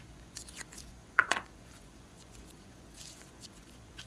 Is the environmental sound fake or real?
fake